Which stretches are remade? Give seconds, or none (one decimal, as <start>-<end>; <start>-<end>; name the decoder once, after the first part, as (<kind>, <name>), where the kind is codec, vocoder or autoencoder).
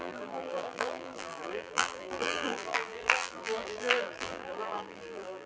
0.0-5.5 (vocoder, BigVGAN v2)